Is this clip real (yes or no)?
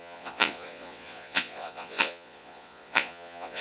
no